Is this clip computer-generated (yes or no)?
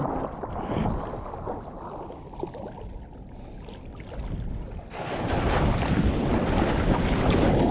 no